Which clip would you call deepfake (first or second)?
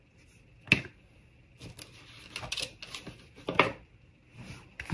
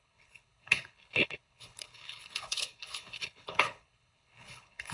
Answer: second